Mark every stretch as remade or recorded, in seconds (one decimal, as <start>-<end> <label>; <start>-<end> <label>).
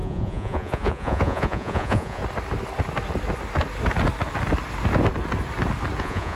0.0-2.2 remade; 2.2-6.0 recorded; 6.0-6.4 remade